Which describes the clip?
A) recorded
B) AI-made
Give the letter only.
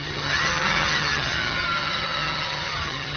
B